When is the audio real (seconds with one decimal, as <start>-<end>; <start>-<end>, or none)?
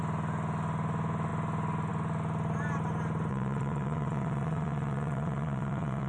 0.0-3.3